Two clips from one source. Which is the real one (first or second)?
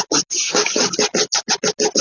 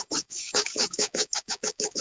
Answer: first